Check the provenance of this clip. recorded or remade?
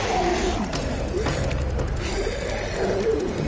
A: recorded